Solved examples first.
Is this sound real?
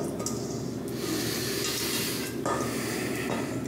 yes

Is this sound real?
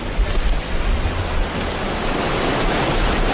yes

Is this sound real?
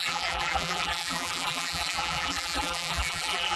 no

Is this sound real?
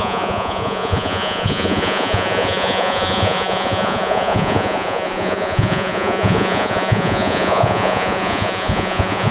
no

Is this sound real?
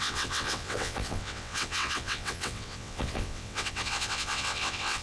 no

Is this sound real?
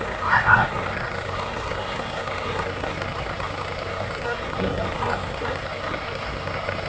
no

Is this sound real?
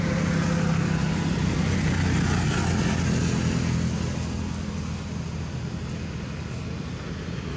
yes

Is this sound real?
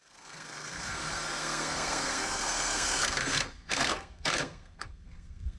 no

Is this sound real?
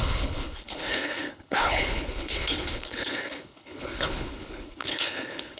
no